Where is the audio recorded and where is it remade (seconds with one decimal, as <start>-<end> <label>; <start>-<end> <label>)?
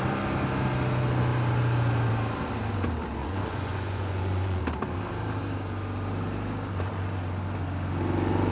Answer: 0.0-3.2 recorded; 3.2-4.6 remade; 4.6-8.5 recorded